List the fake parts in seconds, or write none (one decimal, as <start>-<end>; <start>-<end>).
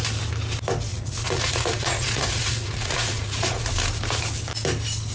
0.9-3.7